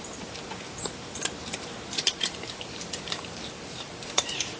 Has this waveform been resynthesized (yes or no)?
yes